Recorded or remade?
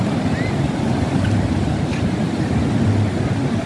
recorded